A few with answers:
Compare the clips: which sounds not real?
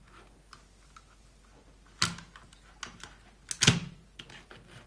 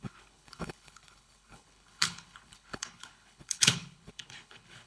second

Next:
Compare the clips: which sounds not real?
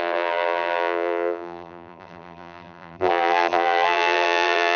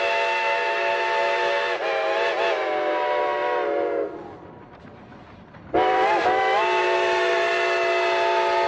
first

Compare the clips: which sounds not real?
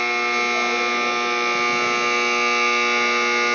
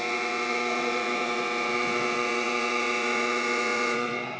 second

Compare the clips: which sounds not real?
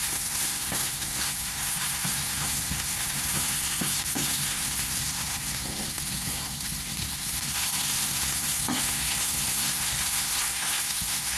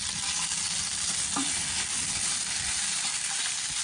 first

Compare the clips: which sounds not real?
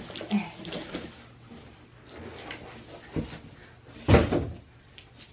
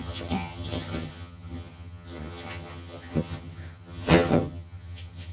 second